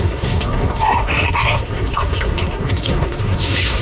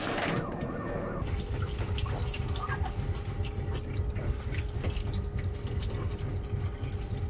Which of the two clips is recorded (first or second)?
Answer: second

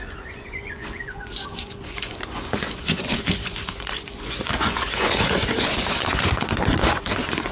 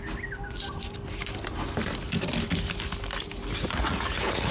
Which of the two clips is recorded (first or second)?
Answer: second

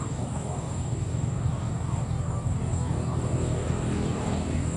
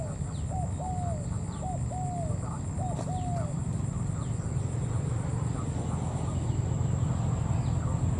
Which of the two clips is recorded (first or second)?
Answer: second